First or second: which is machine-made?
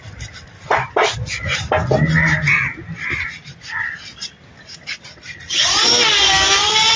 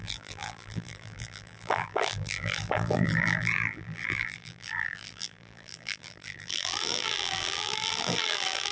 second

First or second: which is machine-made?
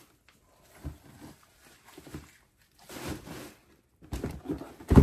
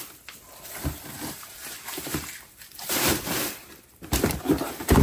second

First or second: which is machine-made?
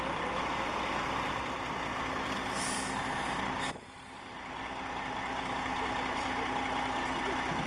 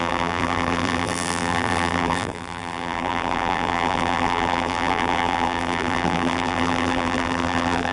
second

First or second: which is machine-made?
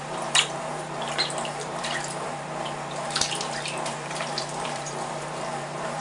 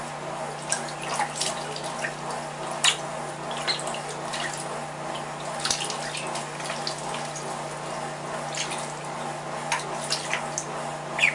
first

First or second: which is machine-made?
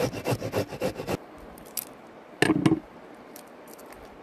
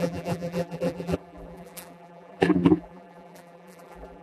second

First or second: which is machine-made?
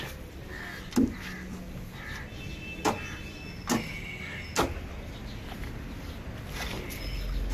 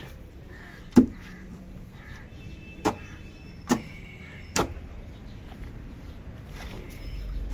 second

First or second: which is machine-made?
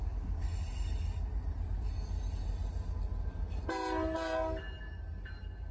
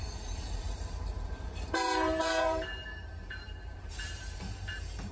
second